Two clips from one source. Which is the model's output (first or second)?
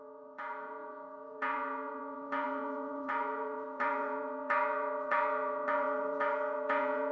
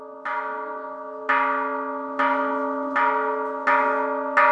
first